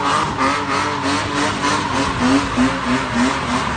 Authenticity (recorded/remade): recorded